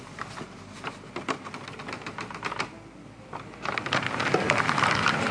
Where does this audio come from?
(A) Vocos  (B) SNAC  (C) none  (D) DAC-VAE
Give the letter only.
C